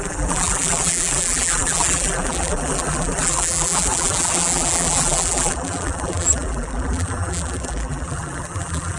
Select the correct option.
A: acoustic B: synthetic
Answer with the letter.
B